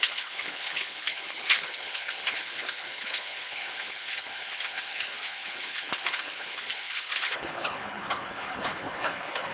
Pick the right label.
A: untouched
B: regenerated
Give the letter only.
B